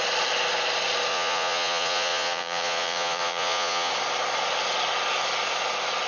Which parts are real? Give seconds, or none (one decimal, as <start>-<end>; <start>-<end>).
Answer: 0.0-1.1; 3.9-6.1